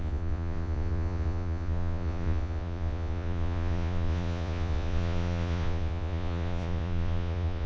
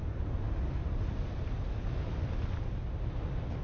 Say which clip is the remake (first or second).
first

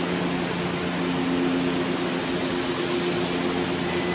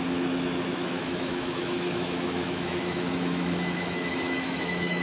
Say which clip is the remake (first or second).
second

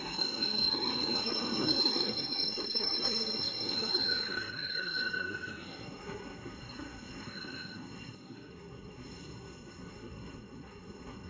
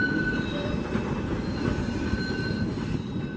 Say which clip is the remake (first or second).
first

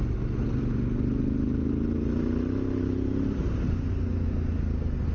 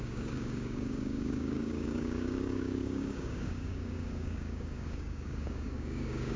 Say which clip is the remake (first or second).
second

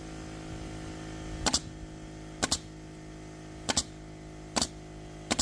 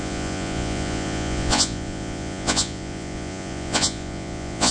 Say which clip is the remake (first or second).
second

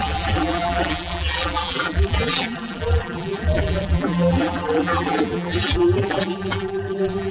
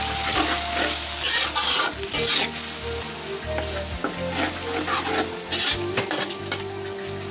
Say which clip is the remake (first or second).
first